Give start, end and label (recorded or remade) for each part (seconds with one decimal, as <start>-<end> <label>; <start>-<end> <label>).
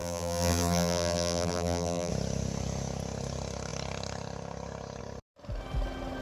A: 0.0-2.1 remade; 2.1-6.2 recorded